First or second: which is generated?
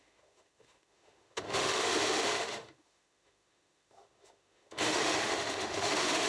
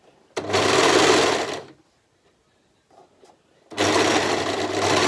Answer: first